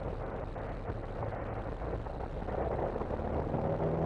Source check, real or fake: real